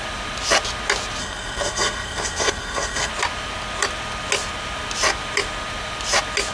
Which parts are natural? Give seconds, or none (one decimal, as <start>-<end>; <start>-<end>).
0.0-1.2; 3.1-6.5